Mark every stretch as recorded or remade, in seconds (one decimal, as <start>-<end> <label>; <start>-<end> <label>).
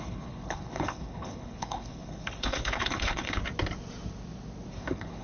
0.0-3.4 remade; 3.4-4.7 recorded; 4.7-5.2 remade